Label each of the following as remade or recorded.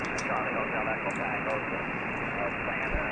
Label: remade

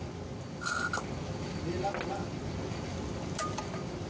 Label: recorded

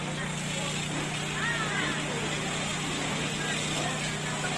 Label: recorded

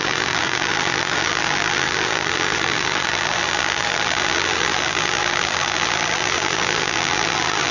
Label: remade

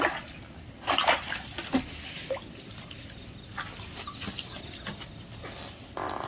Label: remade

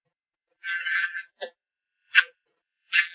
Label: remade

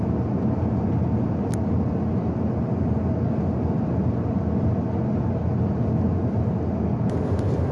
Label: recorded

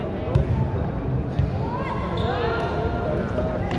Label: recorded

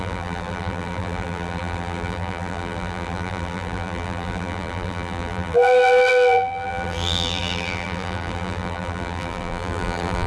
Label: remade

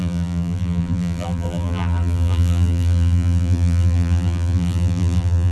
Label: remade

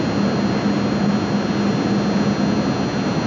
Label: recorded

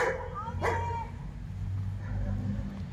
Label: recorded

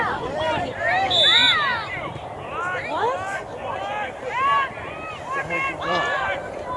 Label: remade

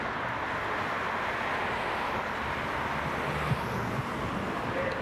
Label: recorded